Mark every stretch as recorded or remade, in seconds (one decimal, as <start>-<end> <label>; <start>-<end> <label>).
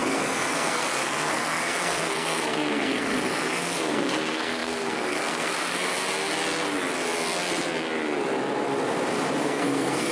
0.0-5.9 remade; 5.9-9.4 recorded; 9.4-10.1 remade